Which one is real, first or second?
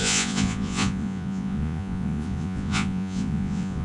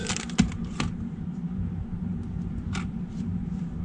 second